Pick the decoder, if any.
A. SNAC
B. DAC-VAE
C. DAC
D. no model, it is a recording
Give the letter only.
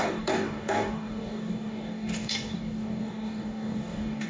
C